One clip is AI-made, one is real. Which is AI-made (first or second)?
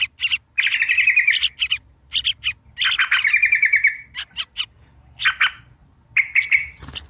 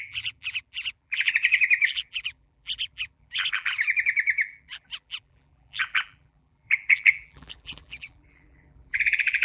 second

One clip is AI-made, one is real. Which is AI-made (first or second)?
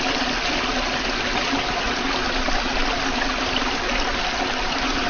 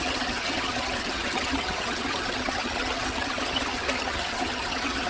second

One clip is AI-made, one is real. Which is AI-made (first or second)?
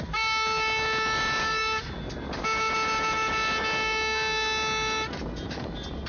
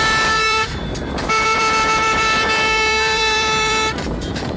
second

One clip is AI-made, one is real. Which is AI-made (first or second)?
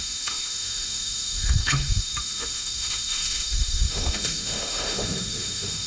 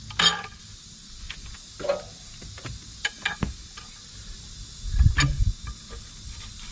first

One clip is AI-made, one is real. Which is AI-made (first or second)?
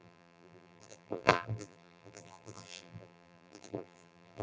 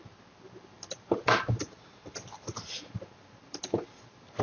first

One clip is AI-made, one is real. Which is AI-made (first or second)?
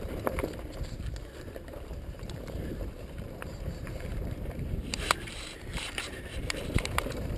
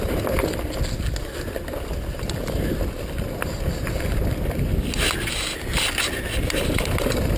first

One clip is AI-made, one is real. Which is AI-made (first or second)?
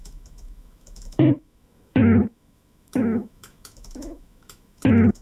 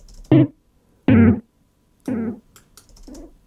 first